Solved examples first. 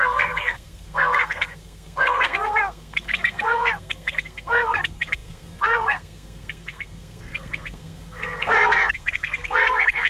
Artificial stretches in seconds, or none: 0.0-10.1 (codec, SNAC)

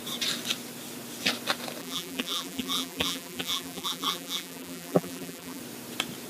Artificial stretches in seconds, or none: 1.8-5.6 (vocoder, BigVGAN v2)

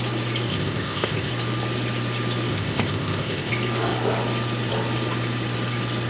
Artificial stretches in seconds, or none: 0.5-1.3 (codec, ZipCodec); 2.5-3.5

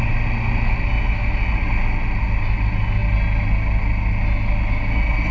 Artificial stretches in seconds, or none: none